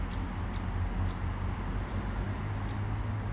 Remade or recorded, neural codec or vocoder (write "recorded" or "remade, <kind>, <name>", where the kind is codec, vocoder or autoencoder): recorded